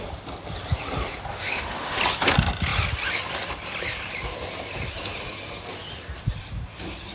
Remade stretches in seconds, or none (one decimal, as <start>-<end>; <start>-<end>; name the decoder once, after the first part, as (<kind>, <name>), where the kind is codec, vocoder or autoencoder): 1.3-2.0 (autoencoder, DAC-VAE)